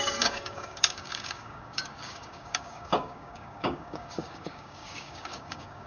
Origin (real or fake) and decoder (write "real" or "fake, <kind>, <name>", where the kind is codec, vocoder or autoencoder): fake, codec, DAC